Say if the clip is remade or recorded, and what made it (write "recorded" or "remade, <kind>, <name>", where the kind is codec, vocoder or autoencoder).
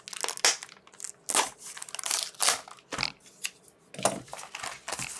recorded